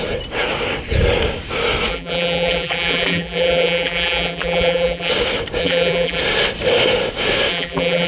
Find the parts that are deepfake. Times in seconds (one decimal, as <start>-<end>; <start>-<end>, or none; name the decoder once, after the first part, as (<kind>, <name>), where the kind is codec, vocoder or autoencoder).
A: 1.9-5.1 (vocoder, BigVGAN v2); 5.6-6.2; 7.5-8.1